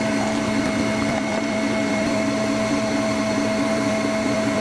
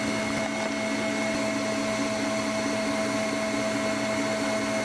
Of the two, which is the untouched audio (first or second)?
second